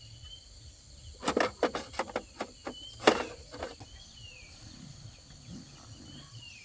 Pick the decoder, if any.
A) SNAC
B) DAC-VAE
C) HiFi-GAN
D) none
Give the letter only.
D